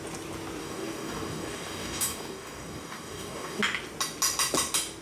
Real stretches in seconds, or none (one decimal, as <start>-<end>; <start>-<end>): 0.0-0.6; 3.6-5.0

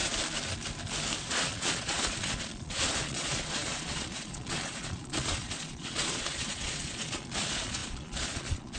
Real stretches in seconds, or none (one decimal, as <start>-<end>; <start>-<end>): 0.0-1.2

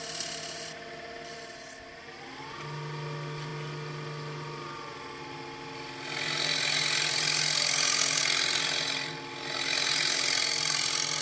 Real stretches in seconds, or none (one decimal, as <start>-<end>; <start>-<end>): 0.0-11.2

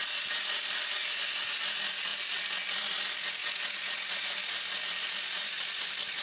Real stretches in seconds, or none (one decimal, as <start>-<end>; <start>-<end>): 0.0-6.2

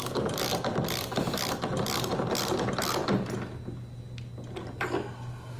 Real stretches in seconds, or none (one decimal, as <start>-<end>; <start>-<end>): 3.0-5.6